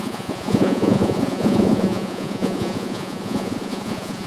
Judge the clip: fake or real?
fake